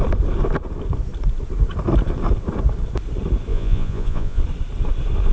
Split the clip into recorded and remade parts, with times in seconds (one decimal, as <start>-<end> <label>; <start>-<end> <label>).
0.0-3.5 recorded; 3.5-4.4 remade; 4.4-5.3 recorded